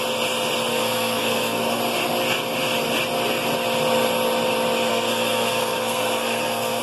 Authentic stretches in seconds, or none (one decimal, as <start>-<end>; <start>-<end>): 0.0-0.7; 1.8-4.9

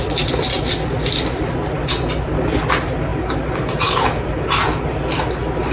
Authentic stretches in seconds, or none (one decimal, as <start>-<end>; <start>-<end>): 0.0-5.7

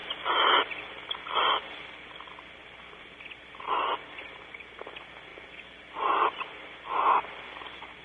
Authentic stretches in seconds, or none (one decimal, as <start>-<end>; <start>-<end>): 0.0-8.0